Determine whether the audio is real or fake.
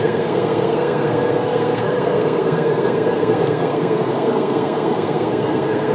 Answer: fake